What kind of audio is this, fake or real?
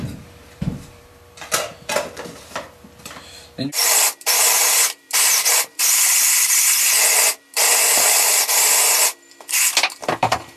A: fake